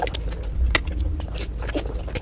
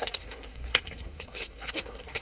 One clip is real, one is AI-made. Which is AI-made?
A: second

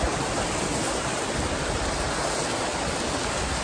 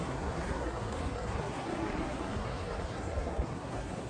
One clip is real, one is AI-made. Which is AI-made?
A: second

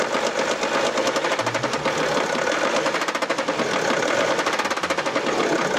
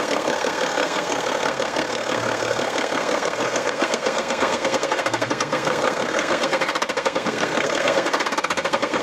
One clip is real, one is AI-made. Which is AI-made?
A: second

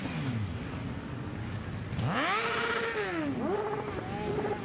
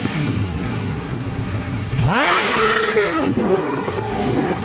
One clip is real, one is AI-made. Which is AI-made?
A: second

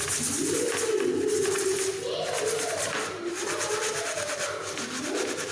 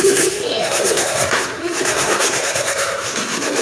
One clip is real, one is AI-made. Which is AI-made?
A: second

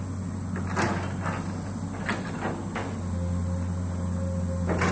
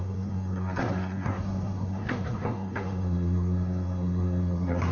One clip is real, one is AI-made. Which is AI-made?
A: second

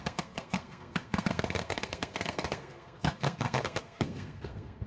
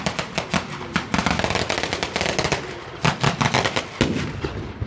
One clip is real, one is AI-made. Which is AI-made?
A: first